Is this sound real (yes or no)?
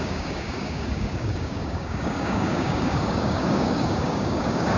no